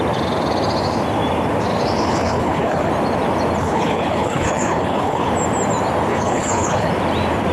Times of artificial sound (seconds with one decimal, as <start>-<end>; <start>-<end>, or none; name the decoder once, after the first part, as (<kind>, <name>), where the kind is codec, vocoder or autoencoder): 2.0-2.9 (codec, HILCodec); 3.6-5.3; 6.1-6.9